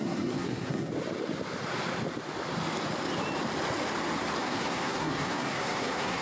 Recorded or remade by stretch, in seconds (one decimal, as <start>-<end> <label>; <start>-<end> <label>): 0.0-0.9 remade; 0.9-4.4 recorded; 4.4-6.2 remade